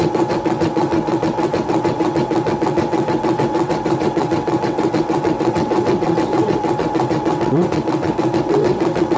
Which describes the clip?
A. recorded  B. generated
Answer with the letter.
B